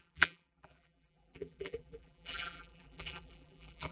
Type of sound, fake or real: fake